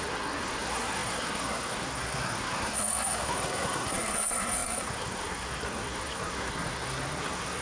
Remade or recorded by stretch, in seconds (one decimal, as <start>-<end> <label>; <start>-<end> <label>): 0.0-7.6 remade